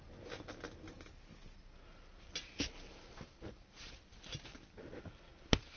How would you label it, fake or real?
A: real